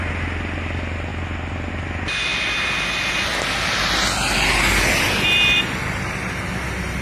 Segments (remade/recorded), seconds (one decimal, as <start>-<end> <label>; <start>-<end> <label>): 0.0-7.0 recorded